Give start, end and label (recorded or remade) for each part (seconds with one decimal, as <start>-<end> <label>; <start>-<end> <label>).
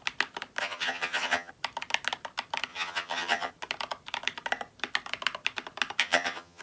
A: 0.0-0.6 recorded; 0.6-1.5 remade; 1.5-2.7 recorded; 2.7-3.5 remade; 3.5-6.0 recorded; 6.0-6.6 remade